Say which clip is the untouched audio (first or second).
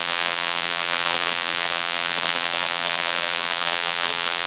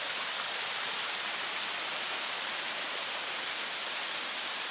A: second